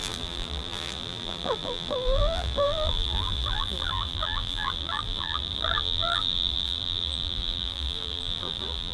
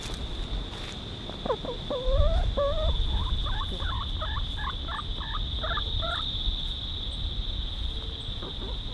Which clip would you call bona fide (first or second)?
second